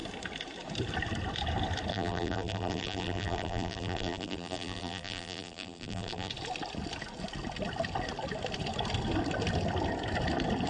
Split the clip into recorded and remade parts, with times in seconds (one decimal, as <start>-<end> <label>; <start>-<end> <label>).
0.0-1.9 recorded; 1.9-6.3 remade; 6.3-10.7 recorded